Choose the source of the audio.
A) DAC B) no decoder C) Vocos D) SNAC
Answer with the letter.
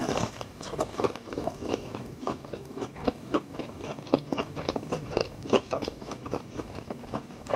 A